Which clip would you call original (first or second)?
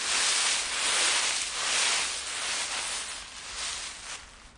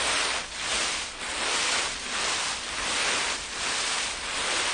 first